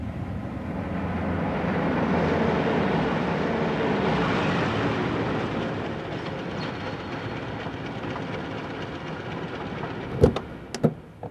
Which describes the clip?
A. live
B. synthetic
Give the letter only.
A